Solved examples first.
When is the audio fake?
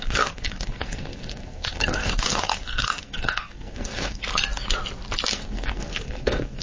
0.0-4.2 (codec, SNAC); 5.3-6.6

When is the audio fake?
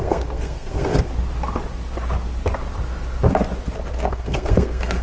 0.0-1.1 (codec, SNAC); 4.1-5.0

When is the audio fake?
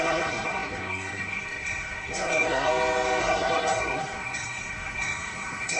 0.0-2.7 (codec, SNAC); 3.2-5.8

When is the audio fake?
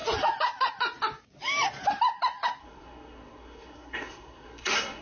2.6-5.0 (codec, SNAC)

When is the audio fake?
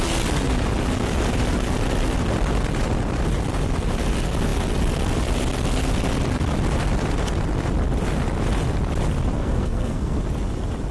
9.4-10.2 (codec, SNAC)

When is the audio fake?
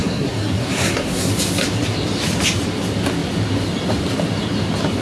0.0-1.3 (codec, SNAC)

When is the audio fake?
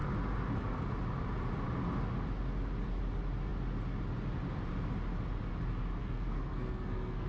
6.0-7.3 (codec, SNAC)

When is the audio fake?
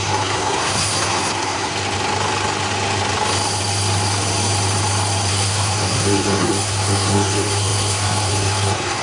0.0-1.7 (codec, SNAC); 5.3-9.0